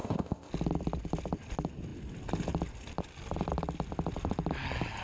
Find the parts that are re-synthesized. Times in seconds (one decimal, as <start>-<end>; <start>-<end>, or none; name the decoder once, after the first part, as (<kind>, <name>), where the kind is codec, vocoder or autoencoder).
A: 0.0-0.5 (codec, ZipCodec)